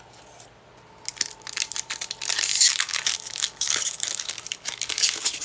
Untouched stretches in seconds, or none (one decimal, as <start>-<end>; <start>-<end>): 0.0-2.5